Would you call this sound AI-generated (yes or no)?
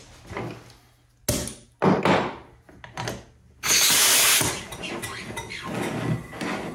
no